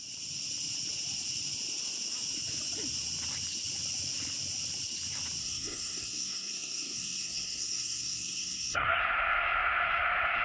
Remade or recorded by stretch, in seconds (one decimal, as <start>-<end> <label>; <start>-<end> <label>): 0.0-5.4 recorded; 5.4-9.0 remade; 9.0-10.4 recorded